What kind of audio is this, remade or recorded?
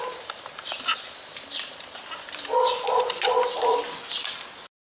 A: recorded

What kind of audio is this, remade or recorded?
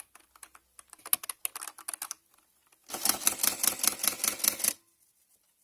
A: recorded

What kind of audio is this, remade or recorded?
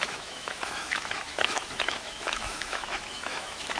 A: remade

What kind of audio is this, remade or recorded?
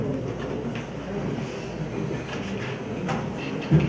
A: recorded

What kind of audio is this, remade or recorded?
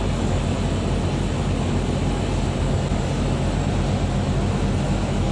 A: recorded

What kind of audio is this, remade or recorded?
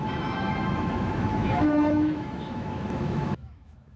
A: remade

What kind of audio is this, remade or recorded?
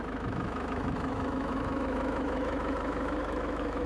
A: remade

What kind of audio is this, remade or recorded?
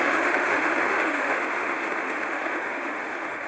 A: remade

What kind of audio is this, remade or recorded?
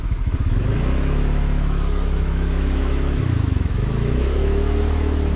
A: remade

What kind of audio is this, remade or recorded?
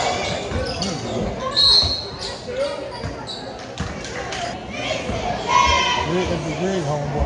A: recorded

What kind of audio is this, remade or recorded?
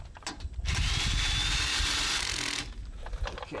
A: recorded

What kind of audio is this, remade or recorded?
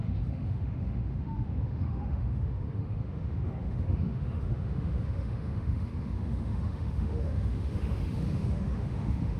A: remade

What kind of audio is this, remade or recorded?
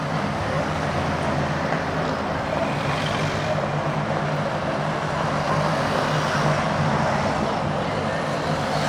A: recorded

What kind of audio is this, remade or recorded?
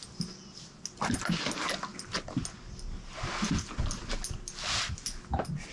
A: recorded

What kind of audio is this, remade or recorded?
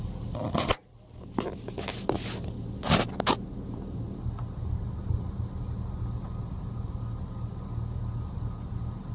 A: recorded